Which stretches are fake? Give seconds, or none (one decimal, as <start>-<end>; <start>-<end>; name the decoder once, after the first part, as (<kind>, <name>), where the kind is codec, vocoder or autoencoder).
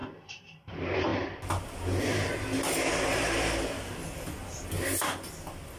0.0-0.7 (vocoder, BigVGAN v2)